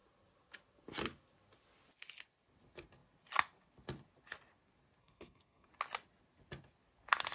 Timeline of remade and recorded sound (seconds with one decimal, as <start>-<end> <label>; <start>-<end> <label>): 0.0-5.0 recorded; 5.0-5.7 remade; 5.7-7.3 recorded